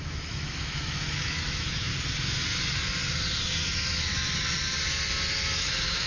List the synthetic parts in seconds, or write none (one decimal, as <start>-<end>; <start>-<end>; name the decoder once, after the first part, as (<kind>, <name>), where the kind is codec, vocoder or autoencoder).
0.0-1.9 (autoencoder, DAC-VAE); 5.6-6.1

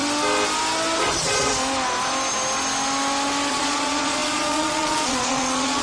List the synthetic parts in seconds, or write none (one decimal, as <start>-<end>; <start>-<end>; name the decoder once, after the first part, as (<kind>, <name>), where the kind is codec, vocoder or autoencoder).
1.0-1.5 (vocoder, Vocos); 3.5-5.8

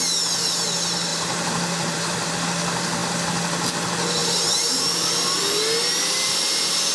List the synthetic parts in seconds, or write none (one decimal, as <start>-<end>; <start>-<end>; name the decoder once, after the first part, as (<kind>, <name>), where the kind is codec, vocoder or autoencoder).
1.1-2.3 (vocoder, BigVGAN v2); 4.2-5.1